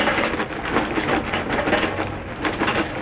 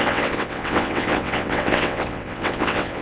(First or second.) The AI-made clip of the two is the second